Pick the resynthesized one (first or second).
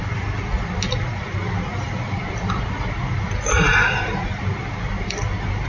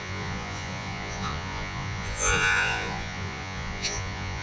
second